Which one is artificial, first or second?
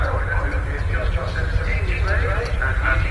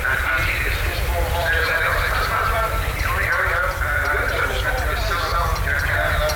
second